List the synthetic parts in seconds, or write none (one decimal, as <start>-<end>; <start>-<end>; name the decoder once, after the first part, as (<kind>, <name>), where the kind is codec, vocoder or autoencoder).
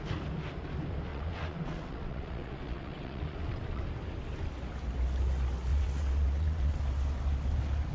1.1-3.8 (vocoder, WaveNeXt); 5.7-6.8